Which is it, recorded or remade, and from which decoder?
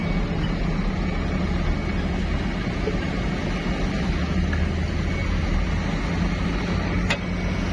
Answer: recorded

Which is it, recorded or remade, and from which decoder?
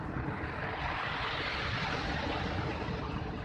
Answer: recorded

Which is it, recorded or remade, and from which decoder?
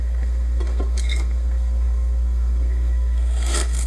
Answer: remade, codec, SNAC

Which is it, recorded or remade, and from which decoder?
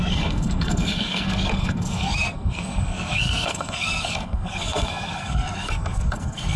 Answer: remade, codec, SNAC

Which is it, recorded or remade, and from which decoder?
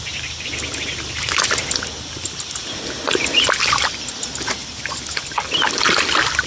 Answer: recorded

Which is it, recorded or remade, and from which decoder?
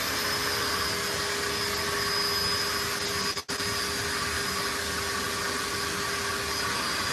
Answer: recorded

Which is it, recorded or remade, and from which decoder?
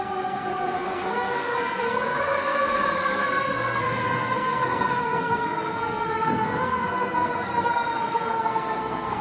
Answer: remade, codec, SNAC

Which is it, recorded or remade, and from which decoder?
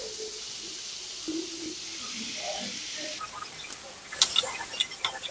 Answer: recorded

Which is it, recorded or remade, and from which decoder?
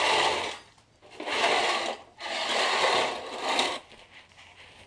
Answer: recorded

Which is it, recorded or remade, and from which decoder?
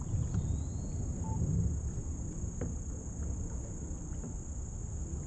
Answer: recorded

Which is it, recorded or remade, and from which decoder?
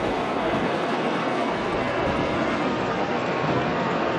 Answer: remade, codec, SNAC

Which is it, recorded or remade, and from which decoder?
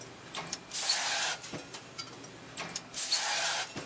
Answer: recorded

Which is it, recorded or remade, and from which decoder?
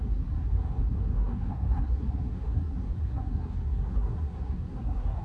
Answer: remade, codec, SNAC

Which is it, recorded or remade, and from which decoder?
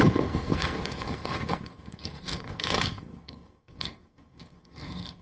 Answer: remade, codec, SNAC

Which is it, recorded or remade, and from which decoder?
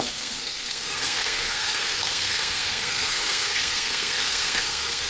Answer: remade, codec, SNAC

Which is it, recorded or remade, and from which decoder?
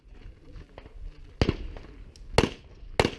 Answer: recorded